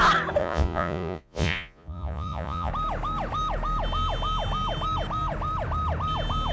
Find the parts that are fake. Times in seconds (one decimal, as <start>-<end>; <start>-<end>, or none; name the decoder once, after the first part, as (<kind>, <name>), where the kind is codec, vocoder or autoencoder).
0.4-2.7 (vocoder, Vocos)